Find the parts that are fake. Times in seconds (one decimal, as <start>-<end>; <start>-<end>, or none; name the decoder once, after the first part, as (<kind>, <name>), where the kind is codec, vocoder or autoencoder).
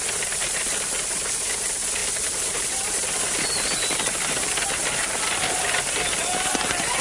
none